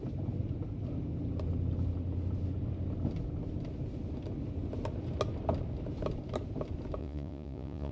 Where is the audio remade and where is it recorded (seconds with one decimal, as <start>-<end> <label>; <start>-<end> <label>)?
0.0-7.0 recorded; 7.0-7.9 remade